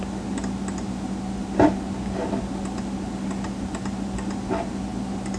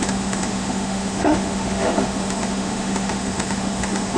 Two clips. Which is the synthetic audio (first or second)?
second